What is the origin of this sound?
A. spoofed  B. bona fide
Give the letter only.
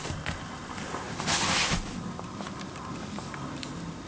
B